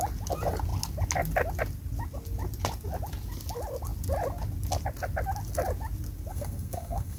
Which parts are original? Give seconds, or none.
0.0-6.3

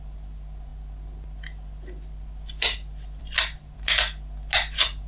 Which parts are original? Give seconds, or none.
0.0-5.1

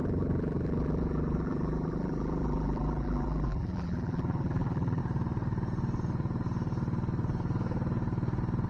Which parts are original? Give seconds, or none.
5.0-8.7

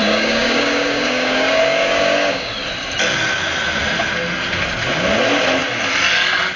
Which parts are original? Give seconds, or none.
2.5-6.6

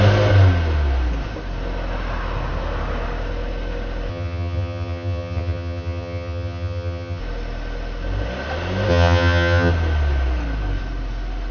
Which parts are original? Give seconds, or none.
0.0-4.1; 7.2-8.9; 9.7-11.5

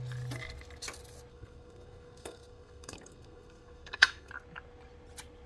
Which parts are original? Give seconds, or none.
0.0-1.3; 4.3-5.5